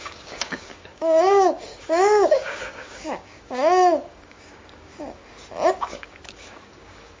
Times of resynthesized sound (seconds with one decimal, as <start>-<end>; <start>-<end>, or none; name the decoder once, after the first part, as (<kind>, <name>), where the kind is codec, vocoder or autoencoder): 0.0-5.2 (codec, DAC); 5.7-7.2